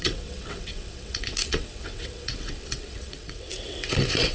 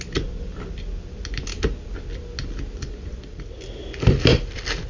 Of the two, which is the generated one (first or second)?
first